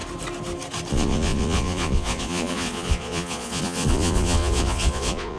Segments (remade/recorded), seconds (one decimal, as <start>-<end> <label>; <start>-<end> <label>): 0.0-0.9 recorded; 0.9-5.4 remade